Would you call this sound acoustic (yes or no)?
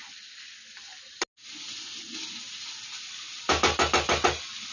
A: yes